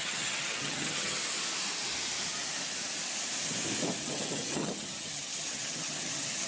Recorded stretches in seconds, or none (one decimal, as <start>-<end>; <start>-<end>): 1.2-4.0